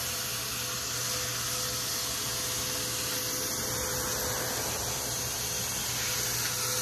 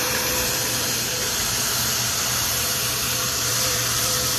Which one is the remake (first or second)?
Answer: second